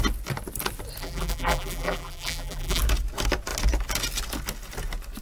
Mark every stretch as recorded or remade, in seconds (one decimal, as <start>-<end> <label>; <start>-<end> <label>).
0.0-1.0 recorded; 1.0-2.8 remade; 2.8-5.2 recorded